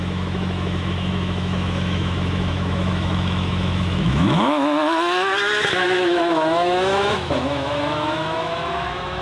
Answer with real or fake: fake